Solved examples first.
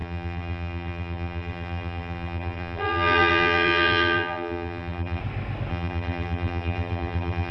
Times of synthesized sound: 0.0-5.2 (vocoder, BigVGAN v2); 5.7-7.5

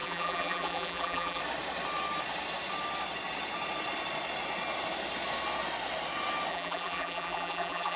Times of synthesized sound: 0.0-1.4 (vocoder, BigVGAN v2); 6.5-8.0

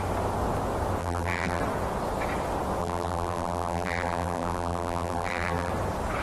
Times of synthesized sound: 1.0-1.6 (vocoder, BigVGAN v2); 2.8-5.7

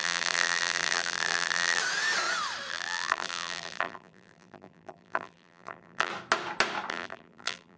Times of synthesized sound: 0.0-1.8 (vocoder, BigVGAN v2); 2.7-6.1; 6.9-7.8

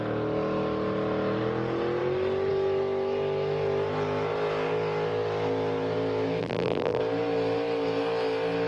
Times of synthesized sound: 6.4-7.0 (vocoder, BigVGAN v2)

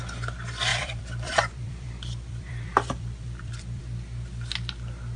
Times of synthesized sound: 0.7-3.8 (vocoder, BigVGAN v2)

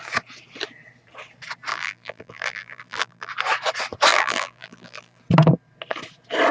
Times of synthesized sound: 1.7-3.3 (vocoder, BigVGAN v2); 4.1-5.2